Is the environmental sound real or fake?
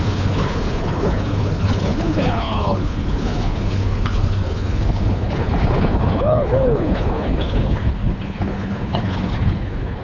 fake